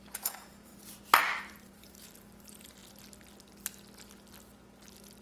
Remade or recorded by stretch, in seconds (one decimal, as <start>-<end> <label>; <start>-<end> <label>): 0.0-0.7 remade; 0.7-1.4 recorded; 1.4-2.8 remade; 2.8-5.2 recorded

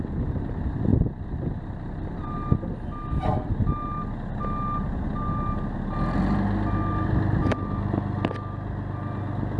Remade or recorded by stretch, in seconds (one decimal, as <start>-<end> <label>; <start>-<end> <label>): 0.0-9.6 recorded

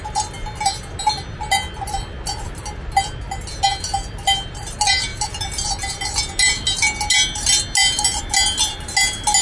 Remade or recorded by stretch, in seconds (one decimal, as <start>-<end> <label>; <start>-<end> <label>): 0.0-9.4 recorded

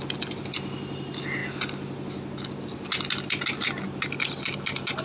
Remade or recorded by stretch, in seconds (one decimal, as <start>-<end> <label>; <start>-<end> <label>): 0.0-5.0 recorded